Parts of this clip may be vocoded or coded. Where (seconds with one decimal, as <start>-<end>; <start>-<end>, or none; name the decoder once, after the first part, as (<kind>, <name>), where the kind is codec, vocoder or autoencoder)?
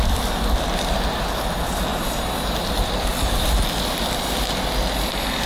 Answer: none